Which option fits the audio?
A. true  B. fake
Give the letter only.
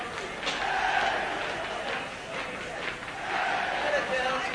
A